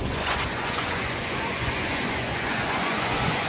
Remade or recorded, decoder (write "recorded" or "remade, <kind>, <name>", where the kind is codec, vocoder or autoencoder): remade, vocoder, Vocos